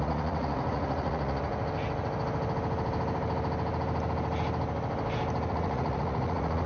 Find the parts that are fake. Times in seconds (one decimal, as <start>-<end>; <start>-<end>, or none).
0.0-1.5; 5.5-6.7